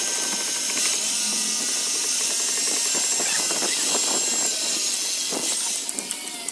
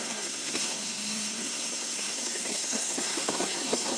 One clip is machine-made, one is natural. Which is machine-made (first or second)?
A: second